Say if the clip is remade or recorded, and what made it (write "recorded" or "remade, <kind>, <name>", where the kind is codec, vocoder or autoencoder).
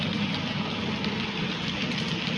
recorded